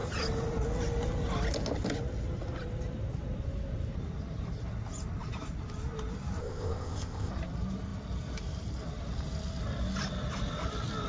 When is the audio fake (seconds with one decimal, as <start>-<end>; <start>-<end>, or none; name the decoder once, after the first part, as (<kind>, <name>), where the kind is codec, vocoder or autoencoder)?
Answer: 6.4-7.3 (codec, ZipCodec)